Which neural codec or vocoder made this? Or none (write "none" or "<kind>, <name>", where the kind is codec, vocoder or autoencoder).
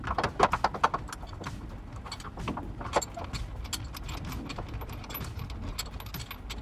none